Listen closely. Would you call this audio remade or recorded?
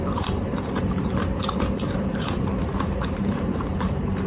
remade